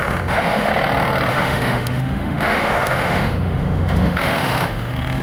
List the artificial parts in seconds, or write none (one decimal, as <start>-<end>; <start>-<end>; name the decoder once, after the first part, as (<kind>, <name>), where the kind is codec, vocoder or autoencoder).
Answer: 0.0-0.7 (autoencoder, DAC-VAE); 1.3-5.2